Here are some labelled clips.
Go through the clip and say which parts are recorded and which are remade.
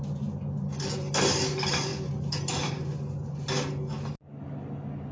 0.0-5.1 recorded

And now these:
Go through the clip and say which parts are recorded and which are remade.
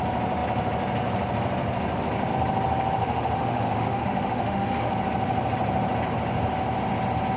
0.0-3.0 recorded; 3.0-4.9 remade; 4.9-7.4 recorded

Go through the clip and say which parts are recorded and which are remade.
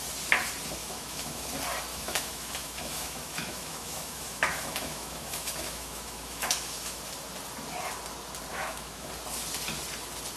0.0-0.8 recorded; 0.8-1.5 remade; 1.5-1.9 recorded; 1.9-7.0 remade; 7.0-8.5 recorded; 8.5-9.1 remade; 9.1-10.4 recorded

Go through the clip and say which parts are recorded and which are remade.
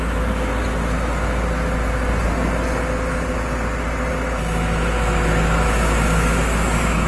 0.0-0.5 remade; 0.5-4.1 recorded; 4.1-7.1 remade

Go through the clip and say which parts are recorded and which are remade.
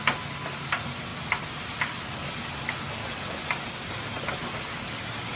0.0-5.4 recorded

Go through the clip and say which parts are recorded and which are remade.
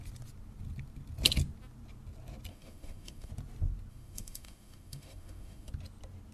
0.0-2.5 recorded; 2.5-3.3 remade; 3.3-3.9 recorded; 3.9-5.7 remade; 5.7-6.3 recorded